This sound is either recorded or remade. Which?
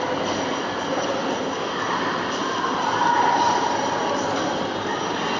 recorded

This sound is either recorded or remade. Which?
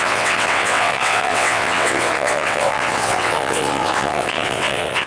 remade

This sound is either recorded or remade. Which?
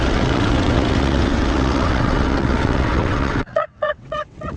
remade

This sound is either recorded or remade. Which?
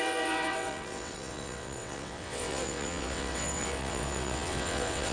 remade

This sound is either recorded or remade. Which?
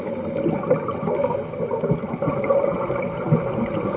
recorded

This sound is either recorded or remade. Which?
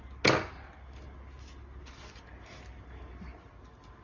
recorded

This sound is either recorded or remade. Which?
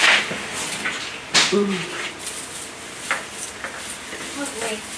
recorded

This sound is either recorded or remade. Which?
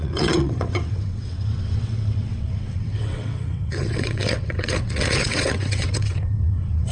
remade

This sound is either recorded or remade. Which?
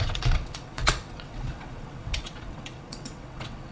remade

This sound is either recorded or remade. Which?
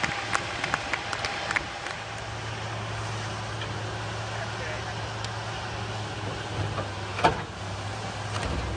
recorded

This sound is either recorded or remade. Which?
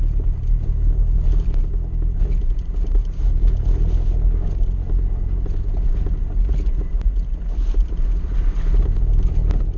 recorded